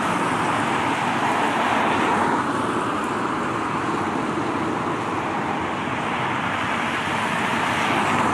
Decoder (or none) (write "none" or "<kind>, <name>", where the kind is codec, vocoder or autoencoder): none